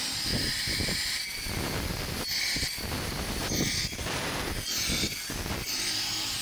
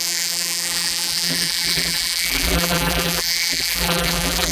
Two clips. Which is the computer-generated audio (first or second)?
second